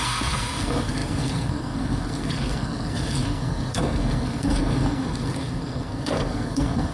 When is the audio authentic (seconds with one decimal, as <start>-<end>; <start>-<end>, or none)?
none